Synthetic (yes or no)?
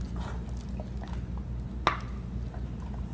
no